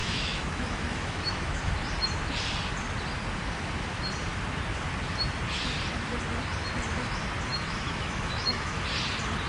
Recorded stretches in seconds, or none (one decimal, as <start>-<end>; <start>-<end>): 1.6-7.5; 8.8-9.5